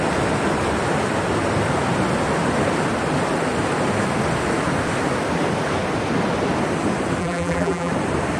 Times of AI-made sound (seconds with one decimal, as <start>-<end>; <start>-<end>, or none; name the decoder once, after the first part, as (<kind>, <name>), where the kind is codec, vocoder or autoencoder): 7.2-7.9 (vocoder, BigVGAN v2)